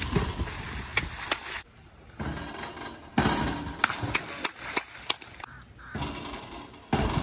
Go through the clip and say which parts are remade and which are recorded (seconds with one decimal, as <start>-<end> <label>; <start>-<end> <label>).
0.0-7.2 recorded